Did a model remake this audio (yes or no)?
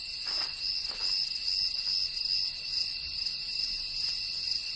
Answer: no